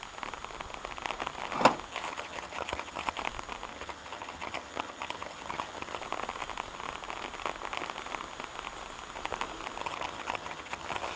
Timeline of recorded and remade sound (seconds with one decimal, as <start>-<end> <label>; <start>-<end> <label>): 0.0-1.9 recorded; 1.9-3.2 remade; 3.2-3.7 recorded; 3.7-6.0 remade; 6.0-9.8 recorded; 9.8-11.2 remade